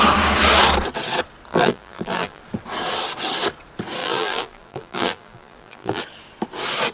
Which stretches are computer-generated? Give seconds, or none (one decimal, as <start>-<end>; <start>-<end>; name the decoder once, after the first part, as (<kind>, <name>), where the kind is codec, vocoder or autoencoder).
1.5-2.4 (vocoder, BigVGAN v2); 4.0-6.0